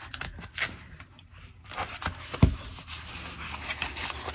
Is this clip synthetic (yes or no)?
no